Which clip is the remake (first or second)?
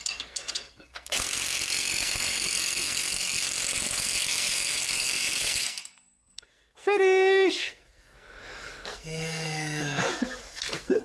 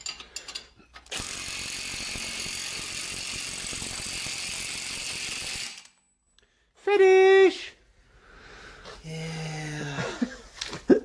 first